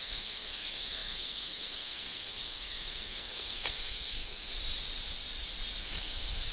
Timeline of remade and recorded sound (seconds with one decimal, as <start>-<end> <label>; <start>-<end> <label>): 0.0-4.5 remade; 4.5-5.8 recorded; 5.8-6.5 remade